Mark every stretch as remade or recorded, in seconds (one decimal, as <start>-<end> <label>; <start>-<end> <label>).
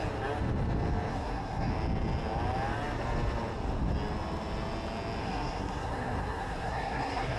0.0-1.1 recorded; 1.1-1.7 remade; 1.7-5.2 recorded; 5.2-7.4 remade